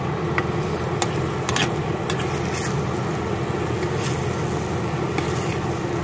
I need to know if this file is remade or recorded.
recorded